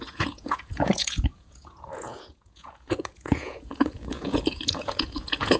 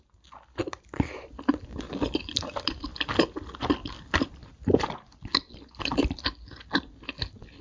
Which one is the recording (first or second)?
second